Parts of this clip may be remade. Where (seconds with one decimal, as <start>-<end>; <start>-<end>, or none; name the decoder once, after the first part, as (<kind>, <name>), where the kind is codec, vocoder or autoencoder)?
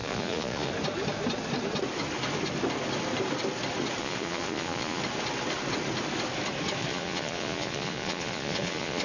0.0-0.7 (vocoder, Vocos); 4.0-5.0; 6.8-9.0